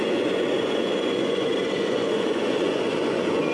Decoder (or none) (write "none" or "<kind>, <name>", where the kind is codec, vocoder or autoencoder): vocoder, Vocos